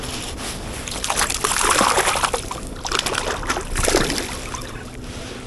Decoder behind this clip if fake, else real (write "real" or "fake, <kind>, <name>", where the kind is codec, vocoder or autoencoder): real